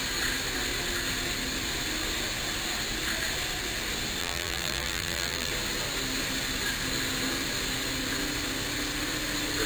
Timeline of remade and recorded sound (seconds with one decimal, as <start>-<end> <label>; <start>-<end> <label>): 0.0-4.2 recorded; 4.2-5.5 remade; 5.5-9.7 recorded